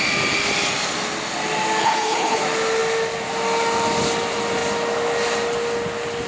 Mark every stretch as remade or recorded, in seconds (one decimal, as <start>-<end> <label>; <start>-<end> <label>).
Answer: 0.0-1.8 recorded; 1.8-2.4 remade; 2.4-6.3 recorded